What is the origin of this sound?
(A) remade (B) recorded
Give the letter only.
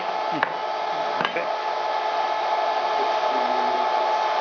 B